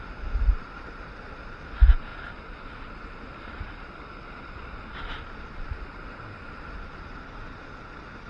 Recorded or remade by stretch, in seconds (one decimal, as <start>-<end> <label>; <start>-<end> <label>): 0.0-8.3 recorded